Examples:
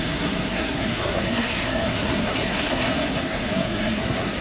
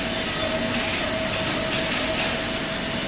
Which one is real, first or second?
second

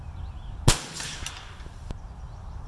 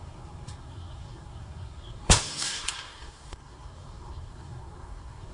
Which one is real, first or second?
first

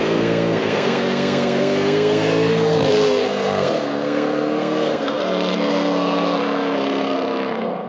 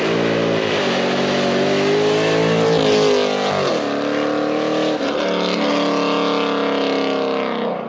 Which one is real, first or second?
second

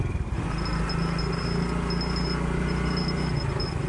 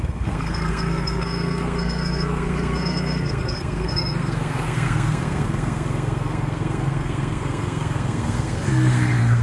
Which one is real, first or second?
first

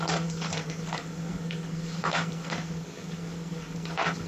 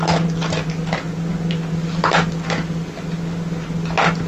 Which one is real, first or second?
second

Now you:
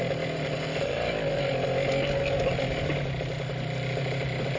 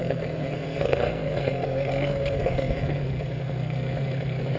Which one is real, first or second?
first